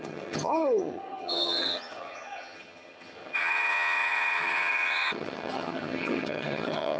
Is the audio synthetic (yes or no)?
yes